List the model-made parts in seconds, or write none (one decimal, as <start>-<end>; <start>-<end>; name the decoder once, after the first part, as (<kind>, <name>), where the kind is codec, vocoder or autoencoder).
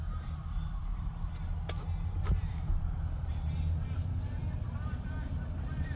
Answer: none